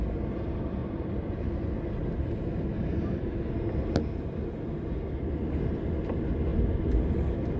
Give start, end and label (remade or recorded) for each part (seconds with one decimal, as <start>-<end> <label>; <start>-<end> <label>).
0.0-7.6 recorded